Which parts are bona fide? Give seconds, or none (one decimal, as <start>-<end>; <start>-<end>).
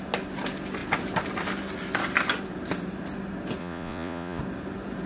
0.0-3.6; 4.4-5.1